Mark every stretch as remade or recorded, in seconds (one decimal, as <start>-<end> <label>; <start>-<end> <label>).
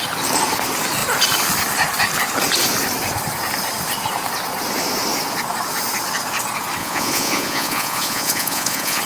0.0-6.8 recorded; 6.8-9.0 remade